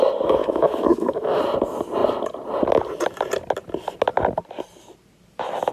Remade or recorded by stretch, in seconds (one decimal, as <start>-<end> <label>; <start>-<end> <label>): 0.0-0.4 recorded; 0.4-1.4 remade; 1.4-5.7 recorded